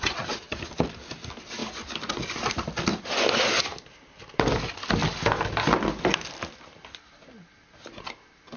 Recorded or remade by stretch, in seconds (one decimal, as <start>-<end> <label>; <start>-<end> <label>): 0.0-1.6 remade; 1.6-2.1 recorded; 2.1-5.0 remade; 5.0-8.6 recorded